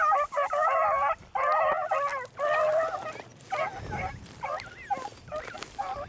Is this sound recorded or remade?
recorded